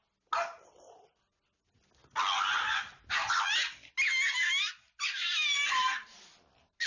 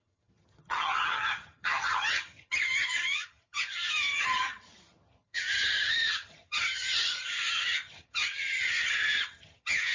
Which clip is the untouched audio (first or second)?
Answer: first